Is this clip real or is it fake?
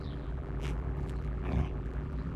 fake